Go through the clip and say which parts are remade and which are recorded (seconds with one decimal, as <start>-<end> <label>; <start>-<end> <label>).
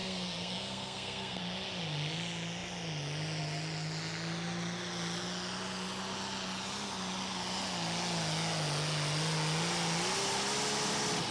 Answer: 0.0-1.4 remade; 1.4-11.3 recorded